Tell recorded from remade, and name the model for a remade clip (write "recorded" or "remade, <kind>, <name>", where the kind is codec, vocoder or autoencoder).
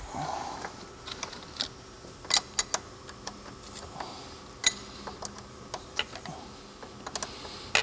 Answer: recorded